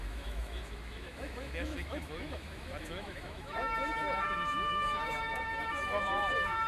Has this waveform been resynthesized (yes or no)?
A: yes